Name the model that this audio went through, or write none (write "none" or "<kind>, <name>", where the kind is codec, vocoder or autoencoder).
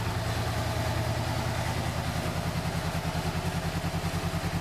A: none